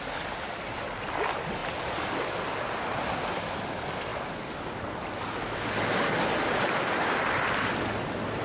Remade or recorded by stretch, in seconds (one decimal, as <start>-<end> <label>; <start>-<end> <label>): 0.0-8.4 recorded